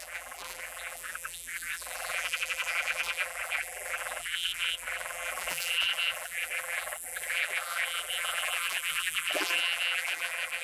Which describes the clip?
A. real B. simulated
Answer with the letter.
B